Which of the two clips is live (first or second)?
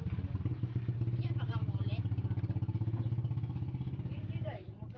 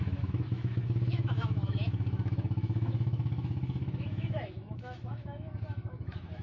first